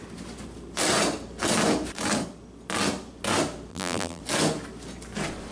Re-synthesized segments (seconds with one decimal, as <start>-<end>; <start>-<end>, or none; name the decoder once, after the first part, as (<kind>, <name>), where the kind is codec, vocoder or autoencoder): 3.7-4.2 (vocoder, BigVGAN v2)